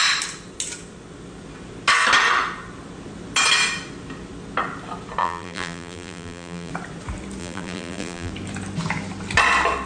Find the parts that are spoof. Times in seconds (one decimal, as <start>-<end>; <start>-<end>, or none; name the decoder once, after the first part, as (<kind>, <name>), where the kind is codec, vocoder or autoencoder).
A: 5.2-6.7 (vocoder, BigVGAN v2); 7.4-8.3